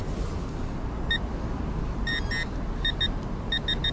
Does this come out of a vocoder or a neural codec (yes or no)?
no